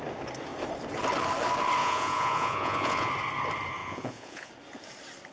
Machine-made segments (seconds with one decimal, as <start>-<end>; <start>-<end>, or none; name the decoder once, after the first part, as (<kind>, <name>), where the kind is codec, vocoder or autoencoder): 1.8-3.1 (vocoder, Vocos); 3.8-4.5